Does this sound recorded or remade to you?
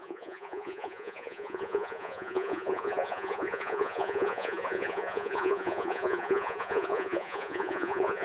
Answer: remade